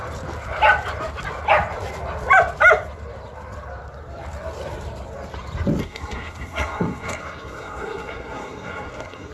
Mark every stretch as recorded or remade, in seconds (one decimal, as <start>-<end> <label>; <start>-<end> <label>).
0.0-5.8 recorded; 5.8-9.3 remade